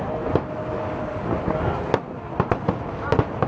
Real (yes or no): yes